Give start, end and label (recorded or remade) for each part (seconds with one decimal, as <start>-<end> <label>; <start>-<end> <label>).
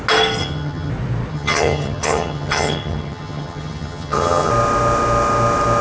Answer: 0.0-0.4 recorded; 0.4-0.9 remade; 0.9-1.3 recorded; 1.3-4.5 remade; 4.5-5.8 recorded